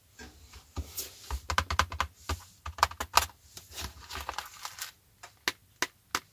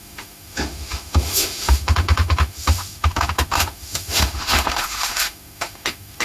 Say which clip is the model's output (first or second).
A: second